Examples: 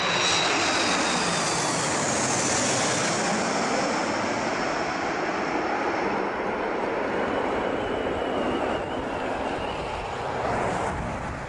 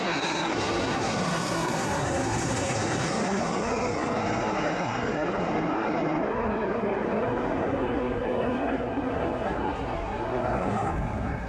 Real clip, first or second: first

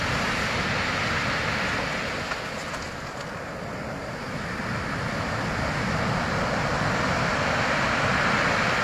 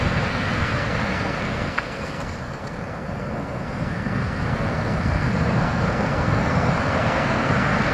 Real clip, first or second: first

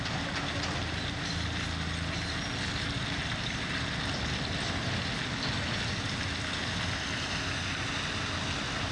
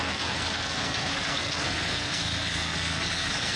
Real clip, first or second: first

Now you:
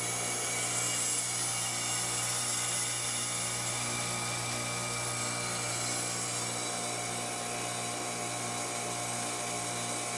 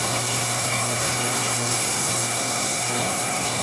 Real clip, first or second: first